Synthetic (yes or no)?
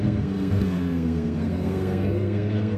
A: yes